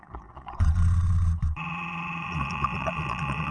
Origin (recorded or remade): remade